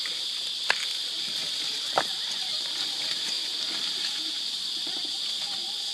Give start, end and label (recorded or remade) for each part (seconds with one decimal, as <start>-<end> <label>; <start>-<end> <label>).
0.0-5.9 recorded